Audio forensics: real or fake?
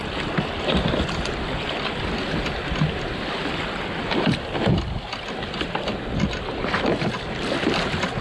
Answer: real